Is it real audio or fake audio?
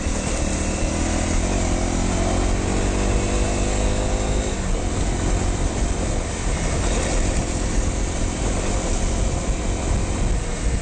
real